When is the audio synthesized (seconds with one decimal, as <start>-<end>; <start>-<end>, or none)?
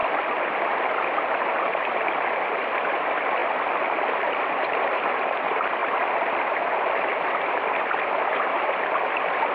0.0-3.4; 4.5-5.8; 6.6-9.5